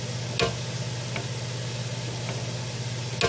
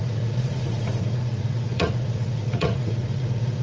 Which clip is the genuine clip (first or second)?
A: first